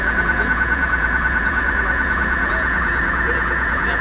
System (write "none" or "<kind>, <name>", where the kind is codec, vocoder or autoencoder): vocoder, Vocos